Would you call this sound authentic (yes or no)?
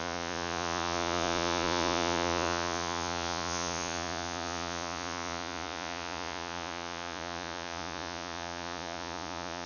no